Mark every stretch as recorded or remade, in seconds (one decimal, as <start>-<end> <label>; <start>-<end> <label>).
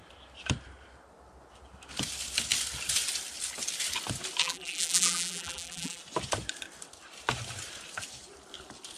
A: 0.0-4.4 recorded; 4.4-6.0 remade; 6.0-9.0 recorded